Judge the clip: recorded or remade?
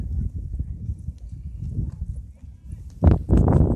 recorded